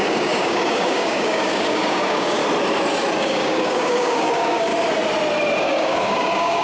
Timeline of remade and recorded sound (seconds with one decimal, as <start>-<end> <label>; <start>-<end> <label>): 0.0-2.4 remade; 2.4-3.2 recorded; 3.2-4.7 remade; 4.7-5.6 recorded; 5.6-6.6 remade